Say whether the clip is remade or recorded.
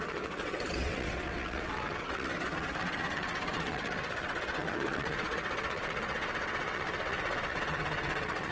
remade